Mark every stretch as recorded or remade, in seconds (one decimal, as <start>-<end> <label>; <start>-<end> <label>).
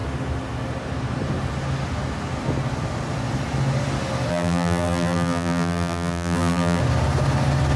0.0-4.3 recorded; 4.3-6.8 remade; 6.8-7.8 recorded